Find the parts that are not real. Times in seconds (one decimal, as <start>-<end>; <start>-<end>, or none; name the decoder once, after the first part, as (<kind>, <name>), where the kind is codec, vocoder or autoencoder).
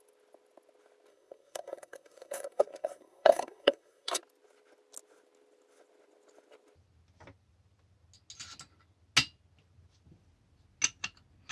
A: 1.1-4.2 (codec, SNAC)